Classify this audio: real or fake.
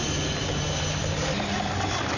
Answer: real